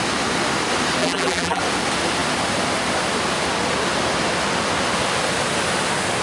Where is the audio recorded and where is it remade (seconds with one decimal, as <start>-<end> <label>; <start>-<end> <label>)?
0.0-1.0 recorded; 1.0-1.6 remade; 1.6-6.2 recorded